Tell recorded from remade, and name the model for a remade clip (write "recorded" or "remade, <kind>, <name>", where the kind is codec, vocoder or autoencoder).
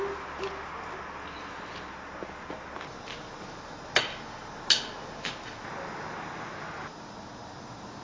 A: recorded